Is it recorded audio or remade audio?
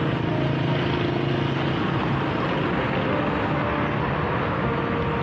recorded